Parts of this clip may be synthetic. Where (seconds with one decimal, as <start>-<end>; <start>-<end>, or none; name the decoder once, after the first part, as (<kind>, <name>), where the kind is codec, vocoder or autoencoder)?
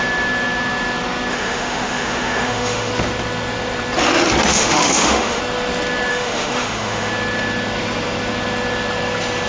1.3-2.9 (autoencoder, DAC-VAE); 4.5-5.4; 6.1-7.1